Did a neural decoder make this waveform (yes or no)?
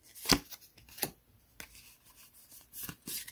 no